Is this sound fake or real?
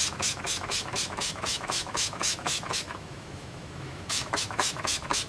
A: fake